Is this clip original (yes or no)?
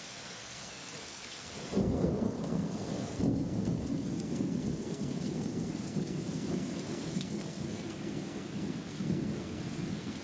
no